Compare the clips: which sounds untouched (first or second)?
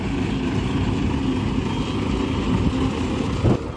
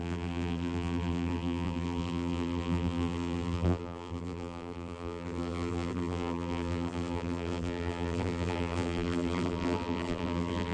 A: first